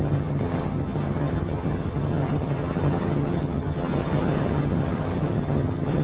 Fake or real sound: fake